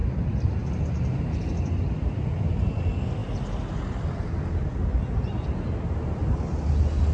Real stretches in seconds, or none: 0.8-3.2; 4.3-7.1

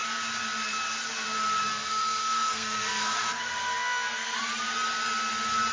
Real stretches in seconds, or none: 0.0-1.7; 4.4-5.7

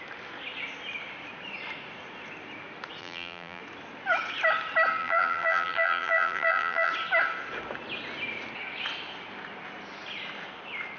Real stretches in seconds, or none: 0.0-3.0; 3.6-5.0; 6.9-11.0

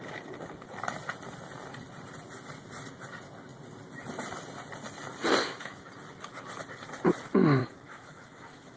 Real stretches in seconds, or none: 0.0-5.4; 5.9-7.6

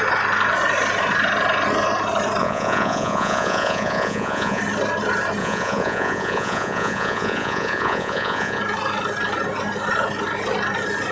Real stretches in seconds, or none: 0.0-2.4; 4.6-5.4; 8.6-11.1